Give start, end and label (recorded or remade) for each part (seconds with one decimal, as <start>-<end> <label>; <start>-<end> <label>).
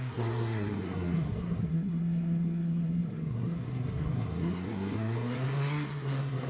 0.0-6.5 remade